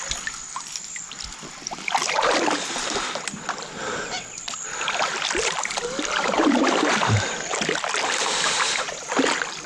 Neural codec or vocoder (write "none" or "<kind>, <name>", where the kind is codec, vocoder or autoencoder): vocoder, BigVGAN v2